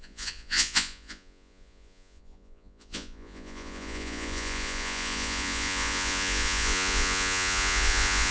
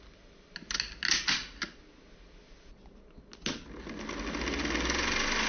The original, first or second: second